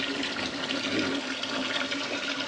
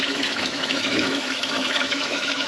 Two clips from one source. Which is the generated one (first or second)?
second